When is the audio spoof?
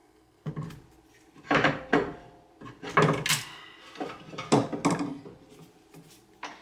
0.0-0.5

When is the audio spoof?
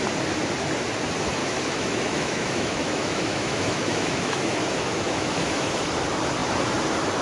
1.4-5.7